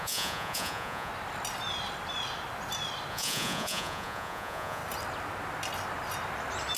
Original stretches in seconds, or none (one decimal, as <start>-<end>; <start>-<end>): 1.1-3.1; 4.8-6.8